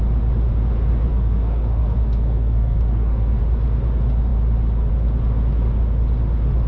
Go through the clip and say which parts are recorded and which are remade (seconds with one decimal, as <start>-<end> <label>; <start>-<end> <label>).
0.0-1.1 recorded; 1.1-3.4 remade; 3.4-6.7 recorded